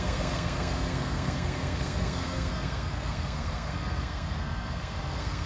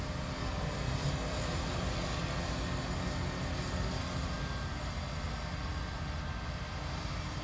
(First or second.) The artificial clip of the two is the first